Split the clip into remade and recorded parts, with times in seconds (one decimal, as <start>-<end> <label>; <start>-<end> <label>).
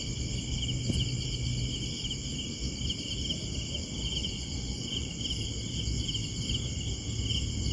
0.0-4.2 recorded; 4.2-5.2 remade; 5.2-7.7 recorded